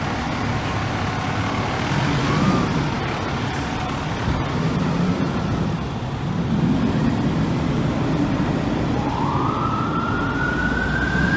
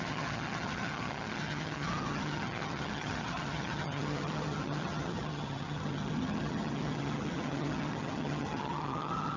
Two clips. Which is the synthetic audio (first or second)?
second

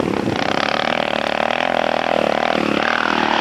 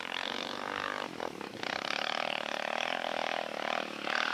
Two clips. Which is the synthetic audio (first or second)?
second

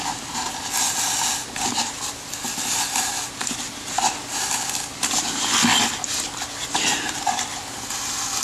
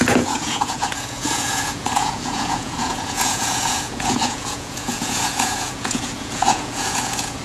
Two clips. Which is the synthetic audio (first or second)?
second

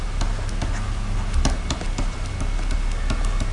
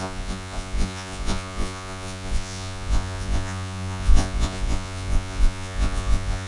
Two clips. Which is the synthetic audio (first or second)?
second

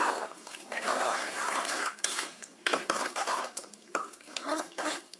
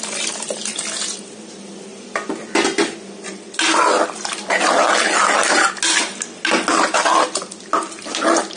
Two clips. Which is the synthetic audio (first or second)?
first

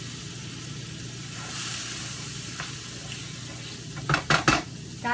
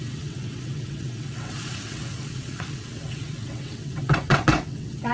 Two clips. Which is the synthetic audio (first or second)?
second